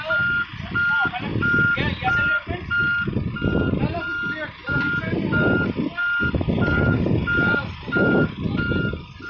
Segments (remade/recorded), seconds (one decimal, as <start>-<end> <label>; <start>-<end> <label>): 0.0-9.3 recorded